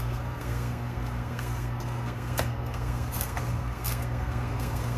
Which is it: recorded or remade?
remade